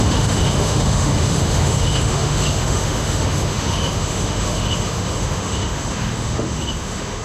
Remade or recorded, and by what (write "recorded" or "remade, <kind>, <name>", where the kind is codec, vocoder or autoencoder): remade, autoencoder, DAC-VAE